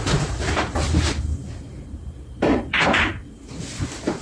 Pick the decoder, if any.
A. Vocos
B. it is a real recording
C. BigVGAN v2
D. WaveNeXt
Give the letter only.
C